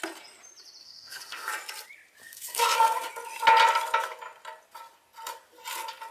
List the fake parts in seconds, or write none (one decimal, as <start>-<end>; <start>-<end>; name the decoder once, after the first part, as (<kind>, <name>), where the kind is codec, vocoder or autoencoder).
0.8-1.5 (codec, SNAC); 2.2-3.1